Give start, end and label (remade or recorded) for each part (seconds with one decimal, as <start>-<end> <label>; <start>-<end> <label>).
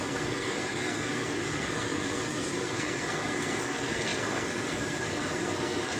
0.0-6.0 remade